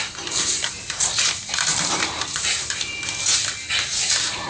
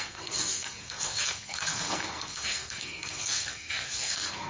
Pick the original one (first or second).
first